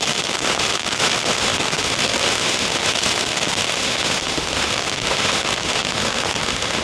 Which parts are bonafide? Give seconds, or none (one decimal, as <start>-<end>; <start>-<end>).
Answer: none